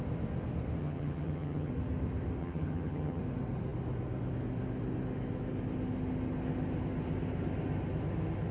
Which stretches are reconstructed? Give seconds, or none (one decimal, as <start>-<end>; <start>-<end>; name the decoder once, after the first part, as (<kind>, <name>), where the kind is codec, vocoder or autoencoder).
0.8-1.7 (vocoder, HiFi-GAN); 2.4-3.2